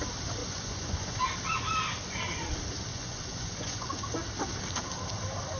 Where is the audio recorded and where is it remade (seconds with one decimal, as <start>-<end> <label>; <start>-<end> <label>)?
0.0-0.4 recorded; 0.4-1.2 remade; 1.2-2.9 recorded; 2.9-4.0 remade; 4.0-5.6 recorded